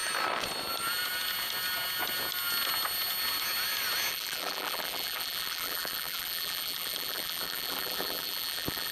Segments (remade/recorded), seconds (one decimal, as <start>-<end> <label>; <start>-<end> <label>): 0.0-4.1 recorded; 4.1-8.9 remade